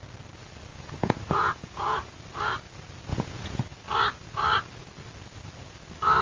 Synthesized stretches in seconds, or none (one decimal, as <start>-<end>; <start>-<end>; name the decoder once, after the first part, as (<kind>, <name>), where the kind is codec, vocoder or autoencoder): 0.7-2.2 (vocoder, Vocos); 3.1-3.6